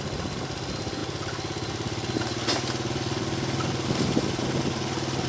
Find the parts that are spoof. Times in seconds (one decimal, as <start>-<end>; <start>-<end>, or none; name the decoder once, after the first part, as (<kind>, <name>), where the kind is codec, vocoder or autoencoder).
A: none